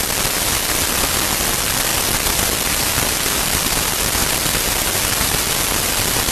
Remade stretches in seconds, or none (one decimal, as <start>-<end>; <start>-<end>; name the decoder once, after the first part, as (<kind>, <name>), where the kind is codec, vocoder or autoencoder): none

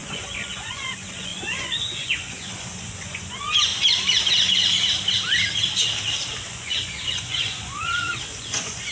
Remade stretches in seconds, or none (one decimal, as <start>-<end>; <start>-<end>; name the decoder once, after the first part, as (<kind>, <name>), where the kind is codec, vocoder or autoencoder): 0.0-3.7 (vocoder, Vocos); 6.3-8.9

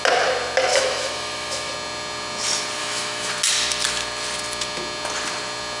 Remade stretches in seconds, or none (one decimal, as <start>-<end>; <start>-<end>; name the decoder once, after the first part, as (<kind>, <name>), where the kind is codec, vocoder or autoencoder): 0.7-1.7 (autoencoder, DAC-VAE); 2.8-3.3